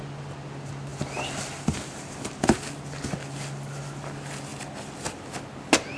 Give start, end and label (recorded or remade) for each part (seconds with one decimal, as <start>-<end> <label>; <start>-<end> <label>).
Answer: 0.0-4.5 recorded; 4.5-5.2 remade; 5.2-6.0 recorded